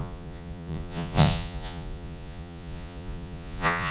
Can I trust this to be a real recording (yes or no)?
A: no